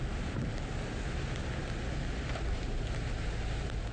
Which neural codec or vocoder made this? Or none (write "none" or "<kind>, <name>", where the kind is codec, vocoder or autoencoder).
none